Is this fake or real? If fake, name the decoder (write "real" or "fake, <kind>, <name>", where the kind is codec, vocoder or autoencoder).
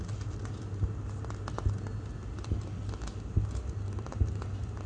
real